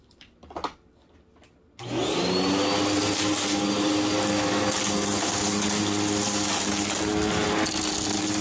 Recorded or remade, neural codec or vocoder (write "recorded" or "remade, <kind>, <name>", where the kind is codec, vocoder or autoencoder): recorded